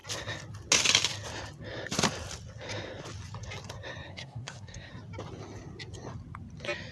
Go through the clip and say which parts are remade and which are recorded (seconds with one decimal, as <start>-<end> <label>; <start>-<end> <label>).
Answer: 0.0-4.1 recorded; 4.1-4.9 remade; 4.9-6.9 recorded